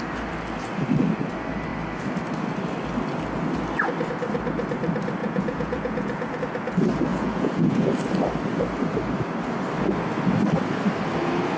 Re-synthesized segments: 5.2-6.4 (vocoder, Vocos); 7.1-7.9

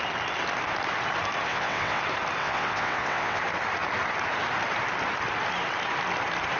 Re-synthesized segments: 1.5-2.0 (vocoder, WaveNeXt); 2.4-3.4

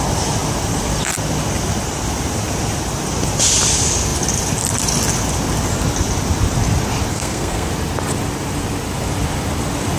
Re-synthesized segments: 7.1-7.7 (codec, SNAC)

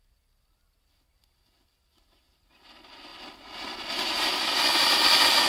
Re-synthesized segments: none

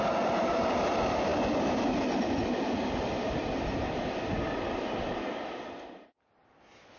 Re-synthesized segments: none

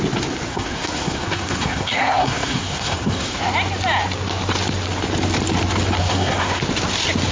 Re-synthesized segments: 0.5-3.4 (codec, SNAC); 6.0-6.6

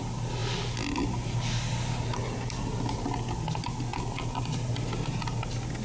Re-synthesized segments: none